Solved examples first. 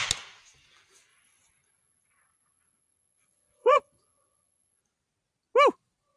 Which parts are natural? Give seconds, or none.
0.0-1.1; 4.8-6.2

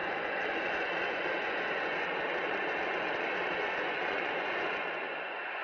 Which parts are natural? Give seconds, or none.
none

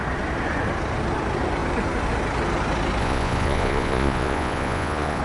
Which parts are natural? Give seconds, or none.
0.0-3.0

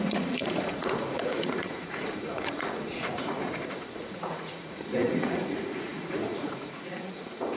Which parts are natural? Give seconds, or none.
none